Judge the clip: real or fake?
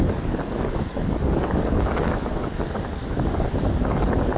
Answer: fake